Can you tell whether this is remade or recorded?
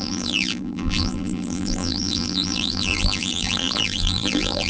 remade